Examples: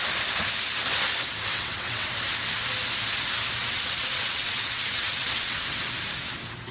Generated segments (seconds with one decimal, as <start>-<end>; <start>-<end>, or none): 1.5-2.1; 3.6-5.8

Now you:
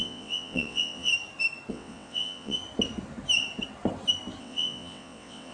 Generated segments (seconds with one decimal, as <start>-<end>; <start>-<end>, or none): 0.0-1.1; 1.7-2.6; 4.4-5.5

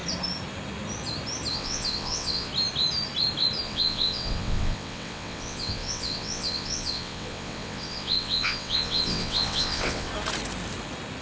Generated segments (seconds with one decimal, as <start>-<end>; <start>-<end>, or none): 1.5-2.5; 3.6-10.1

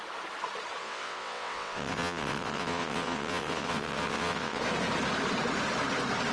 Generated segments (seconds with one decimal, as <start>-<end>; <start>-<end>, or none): 0.8-4.6

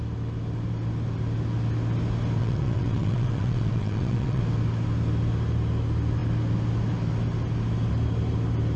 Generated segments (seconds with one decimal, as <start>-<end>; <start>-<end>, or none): 2.4-4.4